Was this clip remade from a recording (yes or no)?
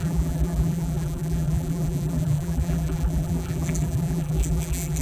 yes